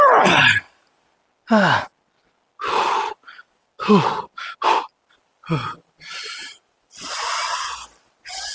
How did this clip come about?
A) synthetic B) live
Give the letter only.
B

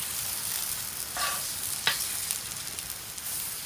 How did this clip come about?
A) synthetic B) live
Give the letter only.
A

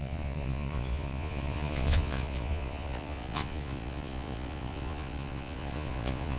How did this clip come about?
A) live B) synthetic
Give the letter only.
B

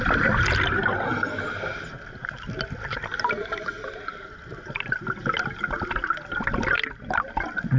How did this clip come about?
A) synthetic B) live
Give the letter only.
B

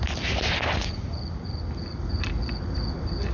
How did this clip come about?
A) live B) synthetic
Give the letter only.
A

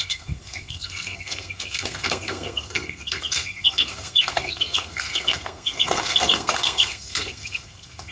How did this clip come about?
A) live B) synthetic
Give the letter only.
B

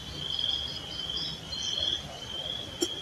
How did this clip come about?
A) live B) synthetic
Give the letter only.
A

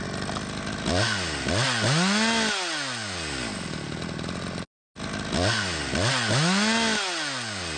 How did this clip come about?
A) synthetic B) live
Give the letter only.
B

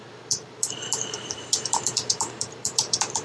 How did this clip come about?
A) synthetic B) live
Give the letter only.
A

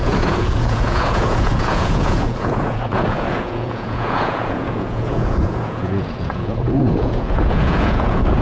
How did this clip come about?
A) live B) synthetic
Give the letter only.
B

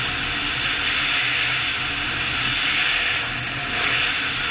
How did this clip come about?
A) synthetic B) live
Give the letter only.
B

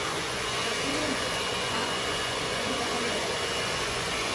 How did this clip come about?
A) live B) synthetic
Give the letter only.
B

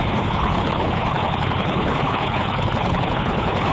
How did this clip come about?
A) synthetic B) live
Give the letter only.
A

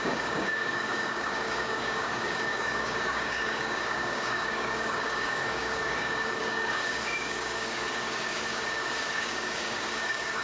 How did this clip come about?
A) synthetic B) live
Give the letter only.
A